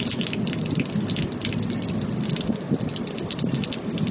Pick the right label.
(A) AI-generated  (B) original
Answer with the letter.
B